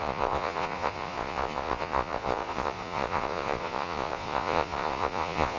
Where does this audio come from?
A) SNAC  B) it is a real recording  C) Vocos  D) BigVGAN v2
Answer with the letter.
C